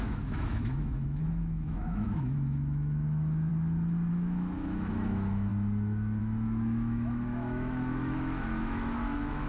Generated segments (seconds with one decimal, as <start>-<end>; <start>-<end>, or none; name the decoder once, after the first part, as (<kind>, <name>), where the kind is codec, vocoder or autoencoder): 0.0-3.5 (autoencoder, DAC-VAE); 4.1-5.5; 6.2-9.5